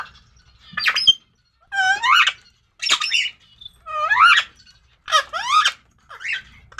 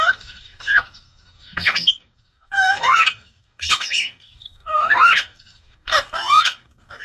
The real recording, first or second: first